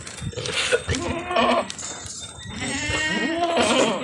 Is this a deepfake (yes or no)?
no